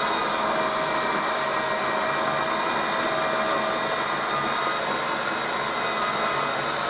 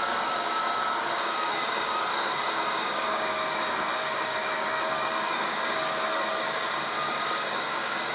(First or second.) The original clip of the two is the first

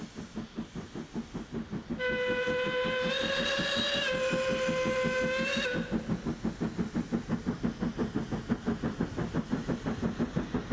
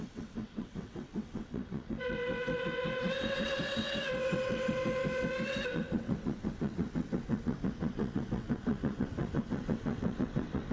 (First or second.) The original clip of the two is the first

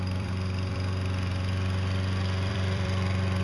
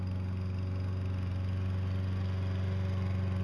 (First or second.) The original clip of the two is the second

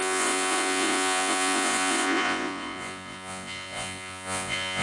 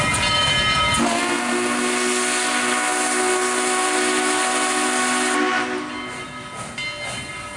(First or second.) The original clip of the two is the second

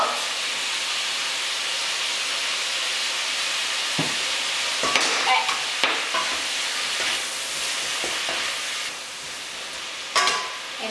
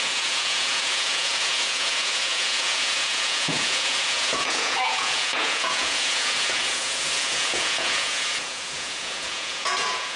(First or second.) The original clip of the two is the first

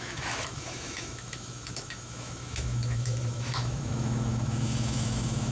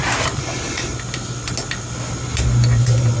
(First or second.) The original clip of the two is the second